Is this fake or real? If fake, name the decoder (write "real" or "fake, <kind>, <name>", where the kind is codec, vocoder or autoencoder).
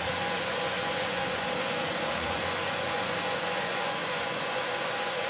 fake, vocoder, Vocos